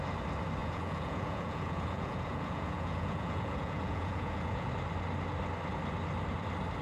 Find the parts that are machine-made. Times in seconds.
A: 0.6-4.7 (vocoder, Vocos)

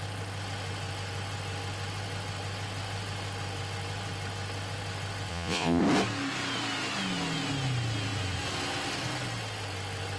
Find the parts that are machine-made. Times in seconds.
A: 5.3-5.8 (vocoder, Vocos)

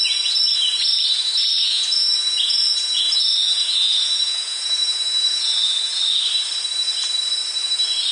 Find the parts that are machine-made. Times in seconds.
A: 1.4-6.0 (vocoder, Vocos)

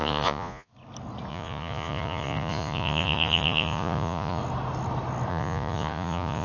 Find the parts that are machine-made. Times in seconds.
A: 0.0-0.7 (vocoder, Vocos); 1.3-4.4; 5.3-6.4

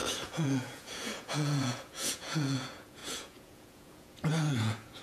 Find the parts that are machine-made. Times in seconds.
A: 0.0-5.0 (vocoder, Vocos)

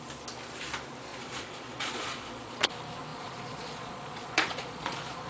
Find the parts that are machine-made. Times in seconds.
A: 1.1-2.7 (vocoder, Vocos); 3.1-5.3

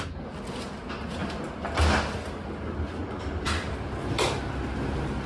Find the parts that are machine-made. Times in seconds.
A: none

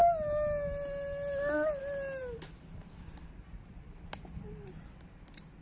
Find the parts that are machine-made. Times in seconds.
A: none